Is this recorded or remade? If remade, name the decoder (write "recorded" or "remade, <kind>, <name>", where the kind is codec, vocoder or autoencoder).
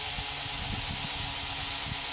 recorded